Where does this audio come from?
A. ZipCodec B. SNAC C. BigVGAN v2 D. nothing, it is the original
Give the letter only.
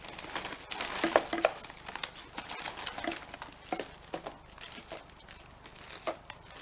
D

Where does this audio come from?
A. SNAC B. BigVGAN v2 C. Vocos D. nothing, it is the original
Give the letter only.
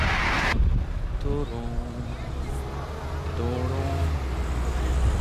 D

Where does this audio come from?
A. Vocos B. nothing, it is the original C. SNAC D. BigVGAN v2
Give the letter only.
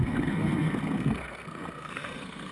C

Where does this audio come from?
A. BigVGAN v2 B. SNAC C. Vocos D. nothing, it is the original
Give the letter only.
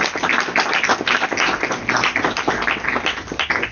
D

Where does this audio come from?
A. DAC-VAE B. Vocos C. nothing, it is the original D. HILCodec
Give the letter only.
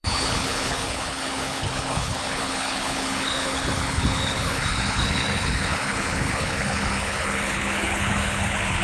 D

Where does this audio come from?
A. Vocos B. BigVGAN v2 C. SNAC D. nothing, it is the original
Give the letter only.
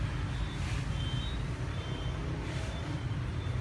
B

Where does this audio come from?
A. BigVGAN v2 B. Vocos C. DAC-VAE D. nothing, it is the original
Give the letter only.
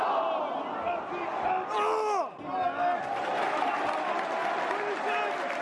D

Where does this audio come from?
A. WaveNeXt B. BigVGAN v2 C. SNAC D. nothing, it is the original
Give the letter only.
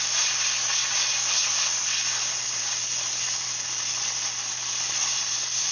D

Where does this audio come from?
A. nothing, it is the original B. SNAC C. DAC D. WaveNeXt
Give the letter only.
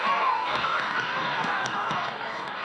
C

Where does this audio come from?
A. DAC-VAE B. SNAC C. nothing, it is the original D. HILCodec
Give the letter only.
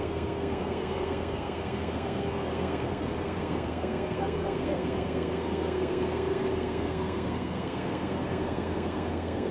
B